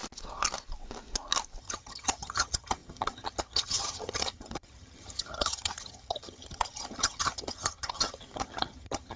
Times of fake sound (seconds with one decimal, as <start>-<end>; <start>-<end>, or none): 1.6-9.2